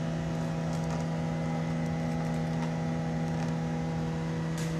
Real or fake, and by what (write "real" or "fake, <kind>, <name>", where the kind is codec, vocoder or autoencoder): real